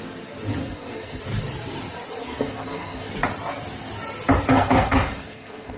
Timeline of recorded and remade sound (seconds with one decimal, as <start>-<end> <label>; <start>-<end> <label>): 0.0-0.6 recorded; 0.6-1.2 remade; 1.2-2.2 recorded; 2.2-3.1 remade; 3.1-4.5 recorded; 4.5-5.8 remade